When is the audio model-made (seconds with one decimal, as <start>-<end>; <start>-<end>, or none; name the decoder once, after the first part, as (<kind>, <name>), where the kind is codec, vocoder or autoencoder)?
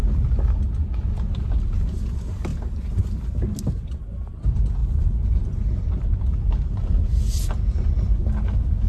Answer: none